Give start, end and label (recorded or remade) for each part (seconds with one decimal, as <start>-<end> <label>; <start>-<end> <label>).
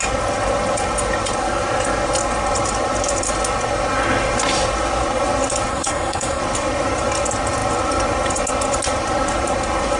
0.0-5.7 recorded; 5.7-6.4 remade; 6.4-10.0 recorded